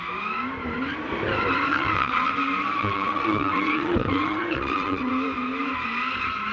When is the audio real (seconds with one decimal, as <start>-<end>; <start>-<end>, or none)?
0.0-1.7; 2.3-2.8; 5.1-6.5